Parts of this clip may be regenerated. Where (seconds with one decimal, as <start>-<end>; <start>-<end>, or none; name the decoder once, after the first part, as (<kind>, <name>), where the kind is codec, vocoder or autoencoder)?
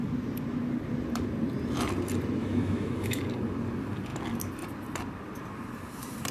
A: 2.4-3.2 (autoencoder, DAC-VAE)